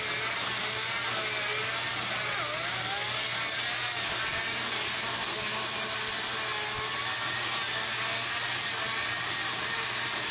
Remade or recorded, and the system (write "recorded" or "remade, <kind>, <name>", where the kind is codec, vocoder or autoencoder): recorded